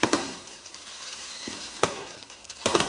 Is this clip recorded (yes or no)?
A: no